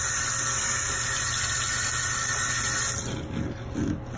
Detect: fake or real real